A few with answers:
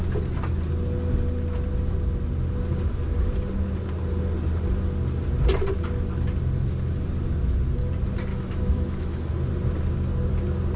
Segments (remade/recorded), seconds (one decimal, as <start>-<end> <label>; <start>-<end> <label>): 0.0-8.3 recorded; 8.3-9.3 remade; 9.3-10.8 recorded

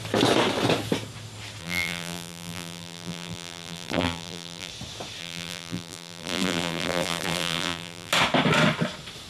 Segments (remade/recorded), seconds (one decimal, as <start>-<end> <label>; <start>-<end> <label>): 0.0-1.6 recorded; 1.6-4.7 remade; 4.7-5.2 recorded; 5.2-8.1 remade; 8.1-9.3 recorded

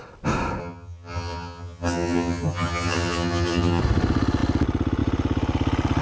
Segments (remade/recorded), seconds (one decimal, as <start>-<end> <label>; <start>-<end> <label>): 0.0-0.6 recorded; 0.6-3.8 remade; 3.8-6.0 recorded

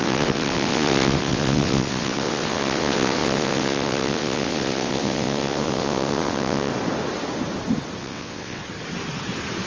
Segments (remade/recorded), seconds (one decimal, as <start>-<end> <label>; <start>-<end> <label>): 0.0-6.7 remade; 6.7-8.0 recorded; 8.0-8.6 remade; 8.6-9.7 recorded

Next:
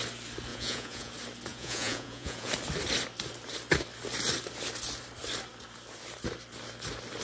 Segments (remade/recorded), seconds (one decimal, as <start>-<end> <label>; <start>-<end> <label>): 0.0-0.5 recorded; 0.5-1.1 remade; 1.1-1.5 recorded; 1.5-2.5 remade; 2.5-7.2 recorded